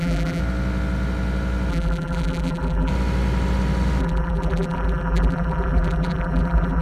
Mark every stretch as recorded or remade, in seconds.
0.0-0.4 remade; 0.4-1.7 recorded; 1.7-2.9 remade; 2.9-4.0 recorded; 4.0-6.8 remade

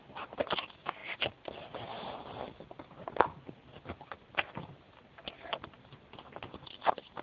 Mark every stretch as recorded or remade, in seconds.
0.0-7.2 recorded